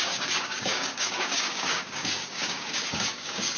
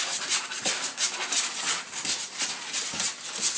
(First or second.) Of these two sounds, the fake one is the first